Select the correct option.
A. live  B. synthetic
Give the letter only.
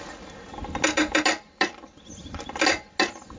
A